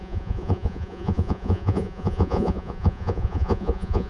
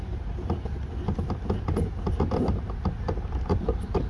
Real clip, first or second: second